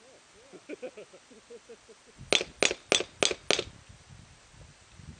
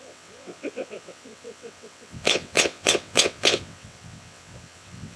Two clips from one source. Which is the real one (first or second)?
first